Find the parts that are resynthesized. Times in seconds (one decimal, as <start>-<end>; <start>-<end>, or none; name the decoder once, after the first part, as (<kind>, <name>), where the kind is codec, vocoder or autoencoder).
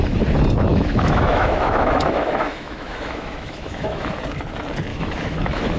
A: 0.7-4.2 (autoencoder, DAC-VAE); 4.9-5.8